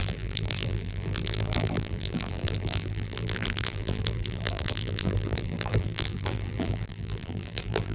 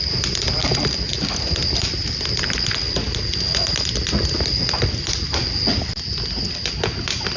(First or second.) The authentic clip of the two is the second